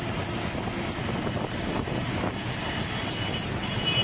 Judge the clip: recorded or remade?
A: recorded